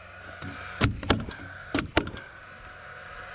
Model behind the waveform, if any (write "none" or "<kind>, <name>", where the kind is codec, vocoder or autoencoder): none